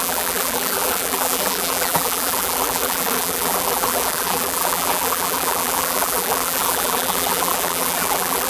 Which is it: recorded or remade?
remade